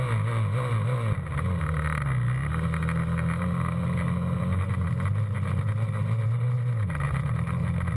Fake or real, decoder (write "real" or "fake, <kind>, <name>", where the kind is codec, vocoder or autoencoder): real